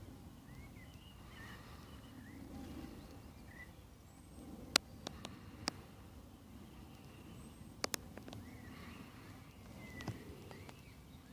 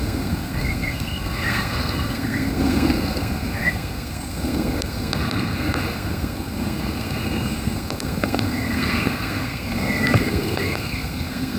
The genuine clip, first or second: first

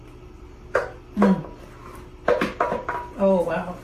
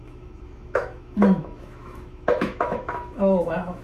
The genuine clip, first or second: first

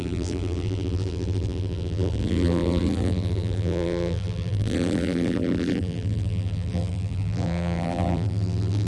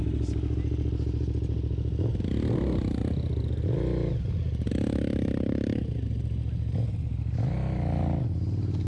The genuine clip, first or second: second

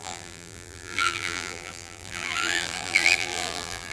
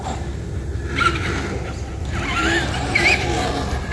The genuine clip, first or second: second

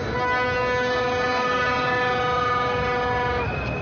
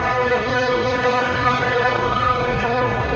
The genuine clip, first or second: first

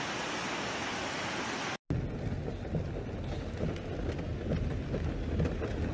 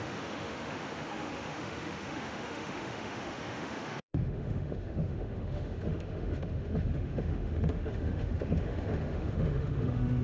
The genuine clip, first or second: first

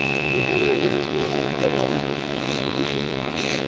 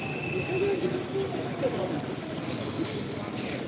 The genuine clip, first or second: second